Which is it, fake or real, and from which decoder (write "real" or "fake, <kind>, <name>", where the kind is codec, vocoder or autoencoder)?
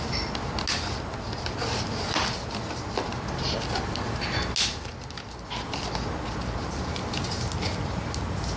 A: real